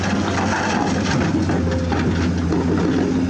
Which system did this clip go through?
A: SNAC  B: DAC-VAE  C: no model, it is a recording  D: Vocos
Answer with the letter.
C